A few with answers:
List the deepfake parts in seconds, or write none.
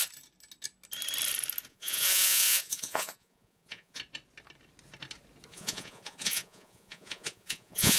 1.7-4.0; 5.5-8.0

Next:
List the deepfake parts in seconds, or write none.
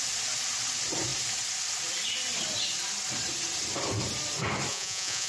4.7-5.3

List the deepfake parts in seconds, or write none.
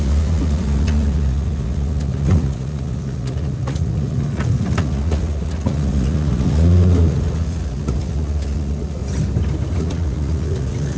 0.0-9.0; 9.8-11.0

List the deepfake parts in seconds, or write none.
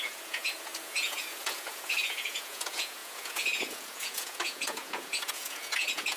0.0-6.2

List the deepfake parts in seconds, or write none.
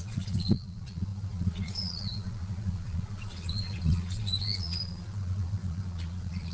0.0-6.5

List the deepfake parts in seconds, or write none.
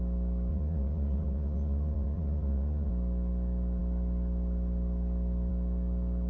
0.5-2.9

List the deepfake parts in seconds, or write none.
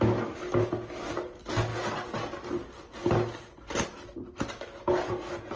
none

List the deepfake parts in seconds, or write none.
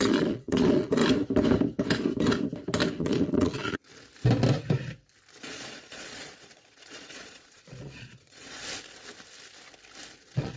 0.0-1.0; 3.0-3.9; 5.3-8.6; 10.2-10.6